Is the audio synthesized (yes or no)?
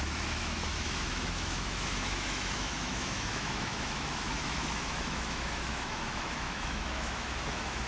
yes